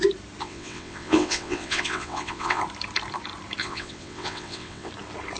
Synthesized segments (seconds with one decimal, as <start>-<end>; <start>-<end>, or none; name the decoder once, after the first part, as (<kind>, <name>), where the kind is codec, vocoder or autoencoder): 0.4-2.6 (vocoder, WaveNeXt); 3.6-4.9